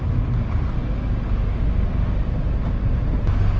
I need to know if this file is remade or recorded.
recorded